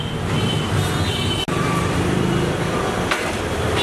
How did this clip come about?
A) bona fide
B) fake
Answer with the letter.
A